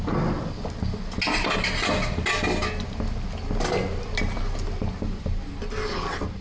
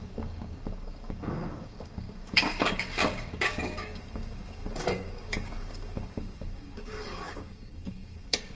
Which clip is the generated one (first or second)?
second